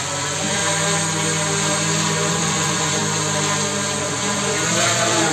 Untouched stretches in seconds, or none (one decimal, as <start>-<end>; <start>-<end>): 0.6-2.3; 3.0-4.0